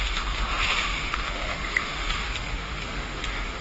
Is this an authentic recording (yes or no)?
no